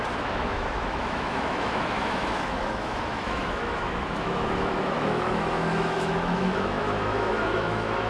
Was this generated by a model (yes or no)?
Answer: yes